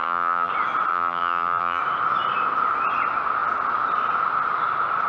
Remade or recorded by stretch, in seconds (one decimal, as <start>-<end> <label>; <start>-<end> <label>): 0.0-0.5 remade; 0.5-0.9 recorded; 0.9-1.8 remade; 1.8-5.1 recorded